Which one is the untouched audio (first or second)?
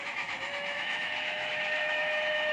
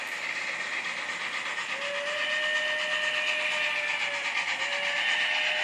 second